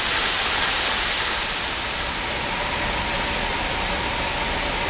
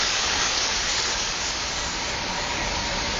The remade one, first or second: second